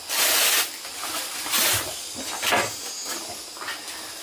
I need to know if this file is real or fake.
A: real